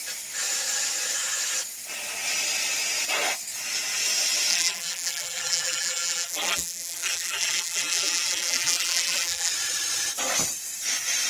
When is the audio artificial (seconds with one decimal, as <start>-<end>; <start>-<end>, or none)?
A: 4.5-9.5